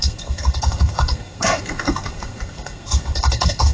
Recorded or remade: remade